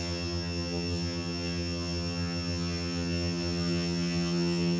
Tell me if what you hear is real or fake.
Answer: fake